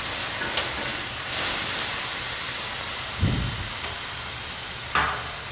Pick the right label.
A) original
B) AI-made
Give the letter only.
A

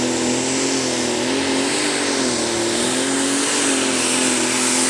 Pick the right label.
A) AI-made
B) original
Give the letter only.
B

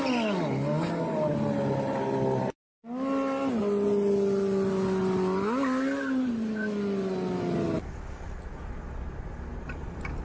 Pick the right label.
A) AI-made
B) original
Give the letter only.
B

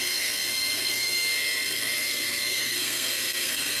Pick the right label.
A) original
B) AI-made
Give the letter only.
B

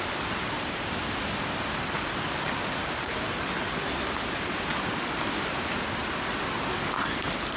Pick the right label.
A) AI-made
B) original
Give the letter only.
B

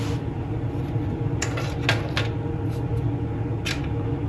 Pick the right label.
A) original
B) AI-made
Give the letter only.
A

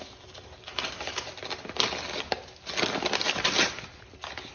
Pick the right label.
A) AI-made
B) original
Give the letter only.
B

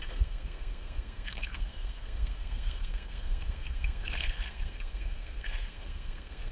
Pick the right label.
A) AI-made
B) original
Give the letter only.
A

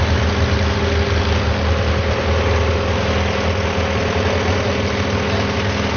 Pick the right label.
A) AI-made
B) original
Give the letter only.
B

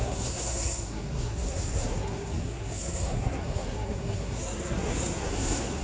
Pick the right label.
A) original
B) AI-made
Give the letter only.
B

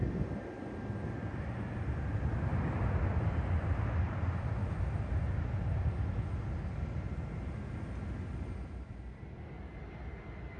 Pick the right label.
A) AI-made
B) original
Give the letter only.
B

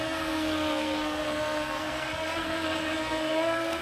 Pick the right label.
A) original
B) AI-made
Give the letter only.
B